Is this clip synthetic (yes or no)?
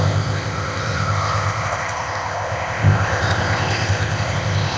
yes